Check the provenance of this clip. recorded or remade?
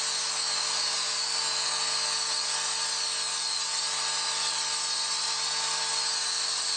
recorded